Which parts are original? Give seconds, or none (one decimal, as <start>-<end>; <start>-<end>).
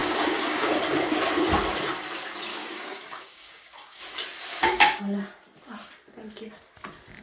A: 0.8-2.5; 4.0-4.5; 5.0-7.2